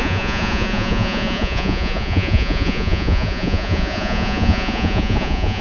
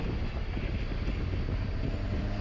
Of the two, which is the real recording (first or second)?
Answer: second